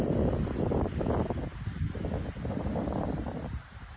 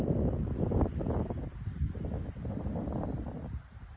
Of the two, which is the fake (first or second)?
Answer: first